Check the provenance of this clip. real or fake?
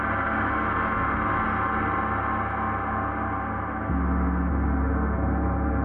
real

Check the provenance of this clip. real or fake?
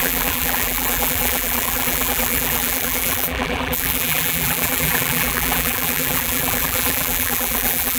fake